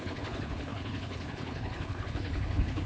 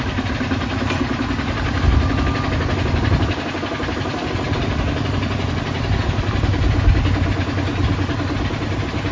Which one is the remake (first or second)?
first